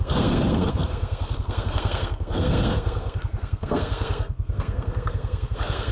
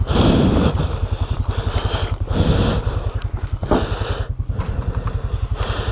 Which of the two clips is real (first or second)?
second